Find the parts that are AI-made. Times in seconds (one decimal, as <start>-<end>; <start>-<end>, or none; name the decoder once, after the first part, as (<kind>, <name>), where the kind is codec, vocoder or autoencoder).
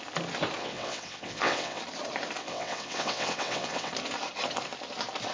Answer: 0.6-1.8 (vocoder, WaveNeXt); 2.4-3.9